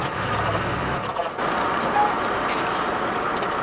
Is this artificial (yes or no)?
no